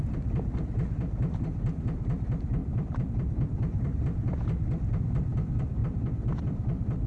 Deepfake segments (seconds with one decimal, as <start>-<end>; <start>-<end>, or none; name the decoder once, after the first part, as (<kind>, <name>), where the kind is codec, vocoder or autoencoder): 0.0-5.8 (vocoder, BigVGAN v2); 6.4-7.1